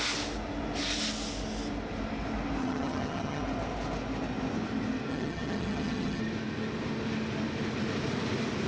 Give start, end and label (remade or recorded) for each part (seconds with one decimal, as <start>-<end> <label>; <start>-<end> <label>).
0.0-2.6 recorded; 2.6-3.4 remade; 3.4-5.1 recorded; 5.1-6.2 remade; 6.2-8.7 recorded